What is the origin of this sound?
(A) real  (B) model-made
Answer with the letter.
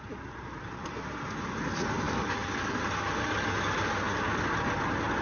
A